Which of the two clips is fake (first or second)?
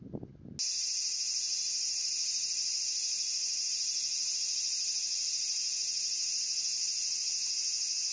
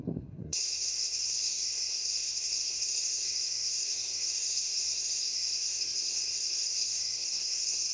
second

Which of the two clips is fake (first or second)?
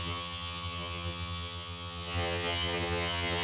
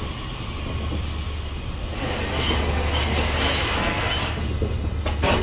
first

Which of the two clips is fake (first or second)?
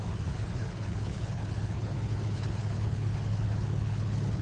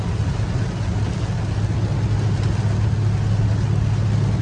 first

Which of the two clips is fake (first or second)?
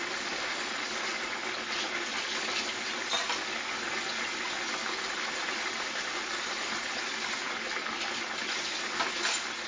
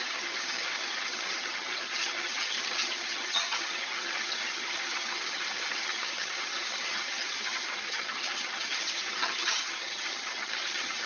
second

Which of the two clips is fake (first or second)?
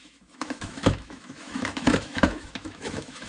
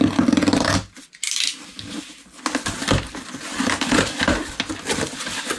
first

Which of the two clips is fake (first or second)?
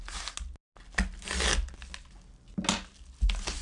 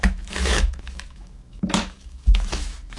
second